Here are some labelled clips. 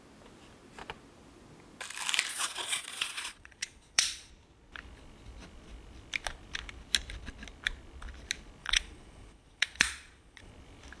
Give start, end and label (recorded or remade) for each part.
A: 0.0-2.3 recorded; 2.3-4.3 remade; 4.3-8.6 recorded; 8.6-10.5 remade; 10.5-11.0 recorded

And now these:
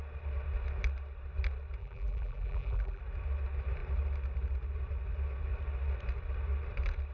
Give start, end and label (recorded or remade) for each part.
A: 0.0-1.8 recorded; 1.8-3.0 remade; 3.0-7.1 recorded

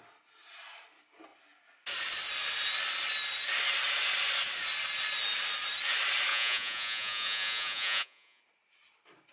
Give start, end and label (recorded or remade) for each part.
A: 0.0-6.3 recorded; 6.3-8.4 remade; 8.4-9.3 recorded

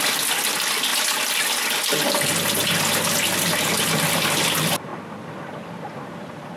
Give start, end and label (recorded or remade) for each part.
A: 0.0-6.6 recorded

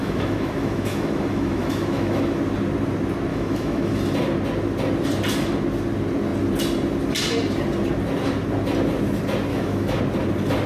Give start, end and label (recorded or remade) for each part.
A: 0.0-2.4 remade; 2.4-3.3 recorded; 3.3-4.0 remade; 4.0-9.5 recorded; 9.5-10.0 remade; 10.0-10.7 recorded

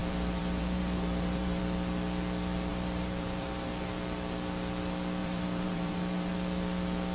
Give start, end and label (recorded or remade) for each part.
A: 0.0-1.6 remade; 1.6-2.7 recorded; 2.7-3.9 remade; 3.9-5.2 recorded; 5.2-6.3 remade; 6.3-7.1 recorded

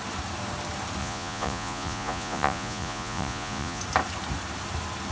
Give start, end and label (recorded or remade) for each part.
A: 0.0-1.0 recorded; 1.0-3.8 remade; 3.8-5.1 recorded